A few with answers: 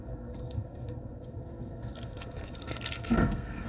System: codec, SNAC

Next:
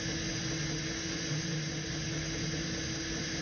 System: none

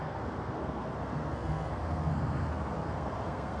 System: codec, SNAC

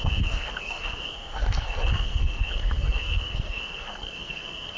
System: codec, SNAC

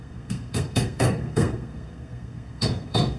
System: codec, SNAC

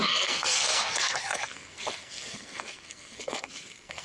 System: codec, SNAC